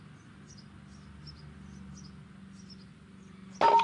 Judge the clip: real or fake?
real